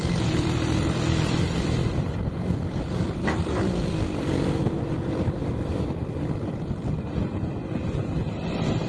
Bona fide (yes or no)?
no